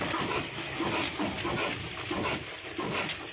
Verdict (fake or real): real